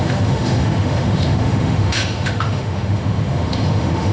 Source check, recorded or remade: remade